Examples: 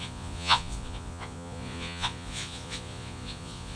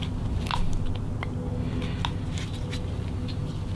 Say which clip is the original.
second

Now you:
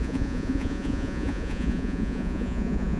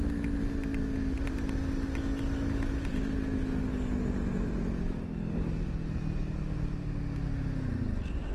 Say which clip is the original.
second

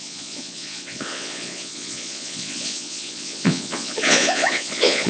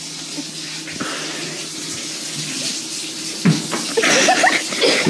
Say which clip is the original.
second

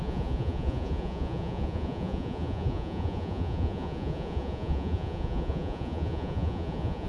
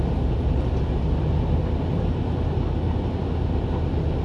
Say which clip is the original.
second